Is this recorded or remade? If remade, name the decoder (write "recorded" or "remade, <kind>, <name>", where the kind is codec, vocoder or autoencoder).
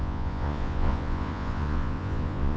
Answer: remade, vocoder, Vocos